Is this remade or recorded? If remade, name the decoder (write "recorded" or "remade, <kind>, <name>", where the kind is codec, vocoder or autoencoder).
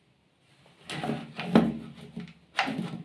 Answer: recorded